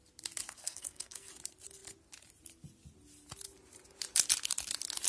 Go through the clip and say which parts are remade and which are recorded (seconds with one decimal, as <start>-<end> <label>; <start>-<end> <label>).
0.0-0.6 recorded; 0.6-1.3 remade; 1.3-5.1 recorded